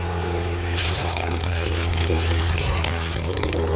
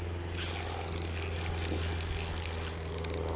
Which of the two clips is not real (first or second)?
first